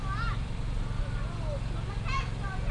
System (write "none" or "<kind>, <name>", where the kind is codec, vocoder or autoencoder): vocoder, BigVGAN v2